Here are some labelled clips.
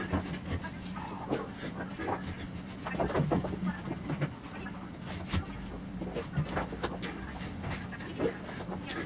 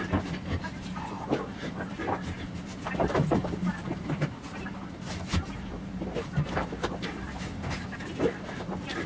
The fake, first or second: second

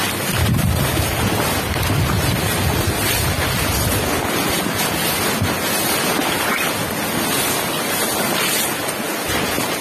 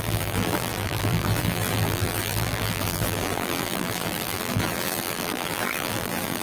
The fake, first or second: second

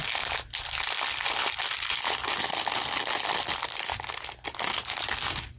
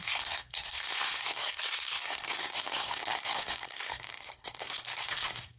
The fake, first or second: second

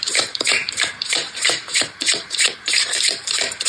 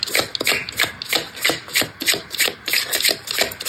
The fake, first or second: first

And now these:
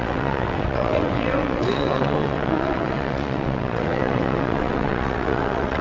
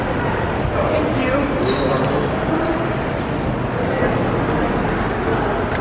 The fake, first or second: first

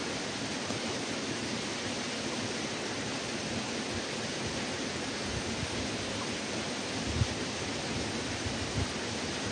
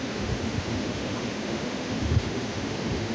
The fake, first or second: second